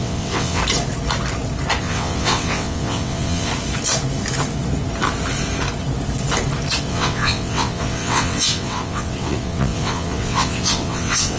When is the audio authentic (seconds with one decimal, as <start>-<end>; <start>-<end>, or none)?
0.6-1.8; 3.5-6.8